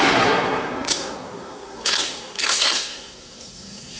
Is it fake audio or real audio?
fake